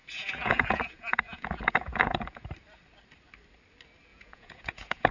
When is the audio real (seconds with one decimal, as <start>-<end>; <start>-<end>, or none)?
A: 2.5-4.1